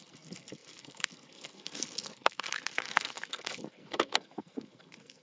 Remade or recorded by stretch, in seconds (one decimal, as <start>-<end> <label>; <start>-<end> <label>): 0.0-5.2 remade